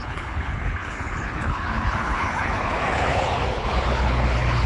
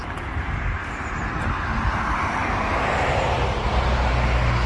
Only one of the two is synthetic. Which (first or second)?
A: first